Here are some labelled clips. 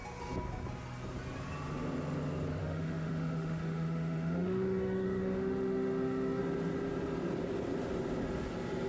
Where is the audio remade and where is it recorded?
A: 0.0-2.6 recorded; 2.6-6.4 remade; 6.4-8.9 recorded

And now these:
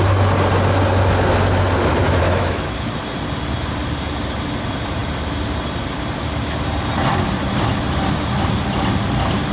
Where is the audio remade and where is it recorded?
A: 0.0-2.0 recorded; 2.0-2.9 remade; 2.9-9.5 recorded

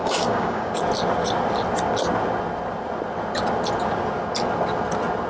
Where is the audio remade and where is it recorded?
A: 0.0-0.7 remade; 0.7-5.3 recorded

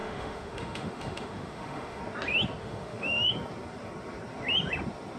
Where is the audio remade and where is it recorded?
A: 0.0-2.0 remade; 2.0-2.6 recorded; 2.6-3.3 remade; 3.3-5.2 recorded

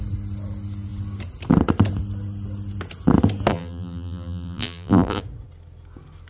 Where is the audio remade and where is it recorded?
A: 0.0-3.5 recorded; 3.5-5.2 remade; 5.2-6.3 recorded

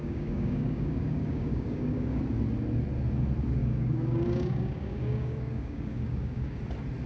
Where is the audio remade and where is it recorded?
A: 0.0-2.2 remade; 2.2-3.6 recorded; 3.6-6.6 remade; 6.6-7.1 recorded

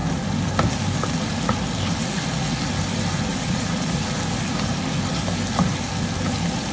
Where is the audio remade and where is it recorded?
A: 0.0-3.3 recorded; 3.3-3.9 remade; 3.9-6.7 recorded